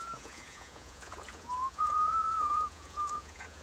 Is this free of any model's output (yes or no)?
no